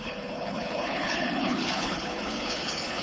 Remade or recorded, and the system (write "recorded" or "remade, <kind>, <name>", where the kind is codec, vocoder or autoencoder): remade, codec, HILCodec